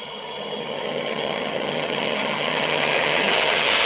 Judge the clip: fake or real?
fake